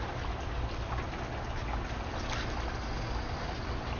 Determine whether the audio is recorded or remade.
recorded